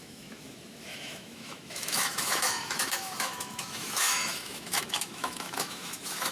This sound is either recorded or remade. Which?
remade